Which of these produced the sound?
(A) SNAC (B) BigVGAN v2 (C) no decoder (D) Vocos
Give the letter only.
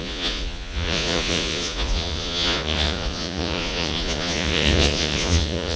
D